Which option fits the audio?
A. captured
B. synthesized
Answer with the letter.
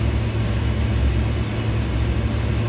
A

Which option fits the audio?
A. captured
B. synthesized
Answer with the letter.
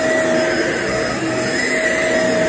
A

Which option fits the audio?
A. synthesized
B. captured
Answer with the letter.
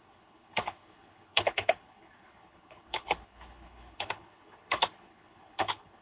A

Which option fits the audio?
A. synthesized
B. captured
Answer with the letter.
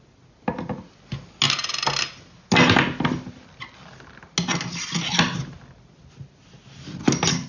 B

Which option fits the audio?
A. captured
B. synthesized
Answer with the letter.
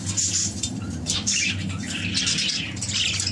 A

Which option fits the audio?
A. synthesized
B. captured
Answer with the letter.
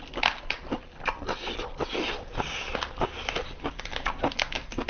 B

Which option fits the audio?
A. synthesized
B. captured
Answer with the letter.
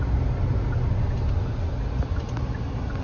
B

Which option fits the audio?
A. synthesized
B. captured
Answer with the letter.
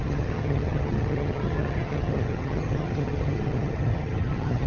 A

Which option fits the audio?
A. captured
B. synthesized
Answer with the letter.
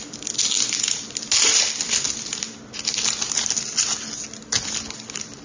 A